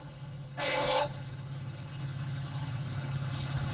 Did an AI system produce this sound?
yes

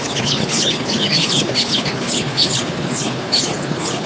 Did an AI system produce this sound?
yes